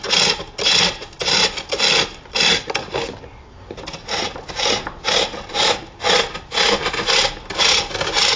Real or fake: real